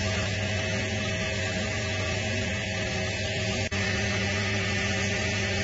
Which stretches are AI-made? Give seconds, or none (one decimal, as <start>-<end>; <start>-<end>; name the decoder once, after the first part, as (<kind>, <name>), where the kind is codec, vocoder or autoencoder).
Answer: 0.0-0.8 (vocoder, BigVGAN v2); 2.5-4.2